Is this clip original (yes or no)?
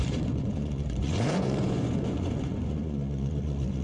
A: no